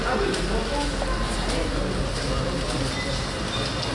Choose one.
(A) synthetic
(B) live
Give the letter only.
B